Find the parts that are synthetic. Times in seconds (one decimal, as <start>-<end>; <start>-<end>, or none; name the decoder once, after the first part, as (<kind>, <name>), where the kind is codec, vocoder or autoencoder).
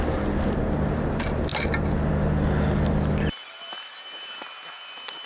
none